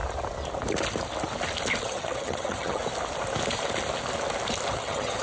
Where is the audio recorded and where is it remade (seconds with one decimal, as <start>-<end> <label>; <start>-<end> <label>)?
0.0-1.8 recorded; 1.8-2.8 remade; 2.8-4.7 recorded; 4.7-5.2 remade